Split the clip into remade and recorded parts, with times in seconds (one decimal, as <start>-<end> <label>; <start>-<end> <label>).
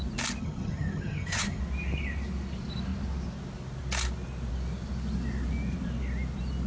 0.0-0.4 recorded; 0.4-1.6 remade; 1.6-6.7 recorded